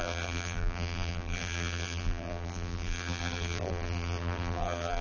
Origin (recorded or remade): remade